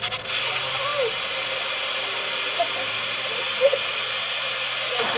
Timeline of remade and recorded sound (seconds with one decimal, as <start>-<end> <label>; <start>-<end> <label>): 0.0-5.2 recorded